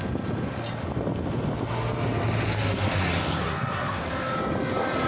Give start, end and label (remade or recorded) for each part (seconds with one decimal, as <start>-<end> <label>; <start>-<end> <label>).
0.0-3.4 recorded; 3.4-4.1 remade; 4.1-5.1 recorded

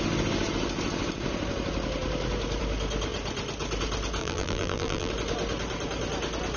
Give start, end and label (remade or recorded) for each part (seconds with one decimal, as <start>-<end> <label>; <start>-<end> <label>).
0.0-4.2 recorded; 4.2-5.1 remade; 5.1-6.6 recorded

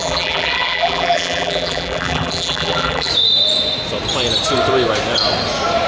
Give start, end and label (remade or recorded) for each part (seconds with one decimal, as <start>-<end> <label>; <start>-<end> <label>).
0.0-3.1 remade; 3.1-5.9 recorded

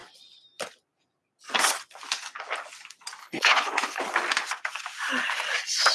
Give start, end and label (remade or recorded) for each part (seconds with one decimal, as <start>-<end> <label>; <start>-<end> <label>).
0.0-3.2 recorded; 3.2-4.0 remade; 4.0-5.9 recorded

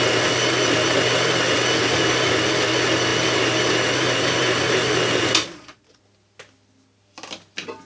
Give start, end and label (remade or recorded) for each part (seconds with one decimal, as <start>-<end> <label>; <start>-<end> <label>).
0.0-5.4 recorded; 5.4-6.0 remade; 6.0-7.8 recorded

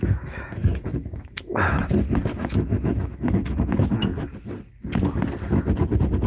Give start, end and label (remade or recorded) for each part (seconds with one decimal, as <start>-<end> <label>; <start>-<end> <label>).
0.0-1.9 remade; 1.9-2.4 recorded; 2.4-4.1 remade; 4.1-6.3 recorded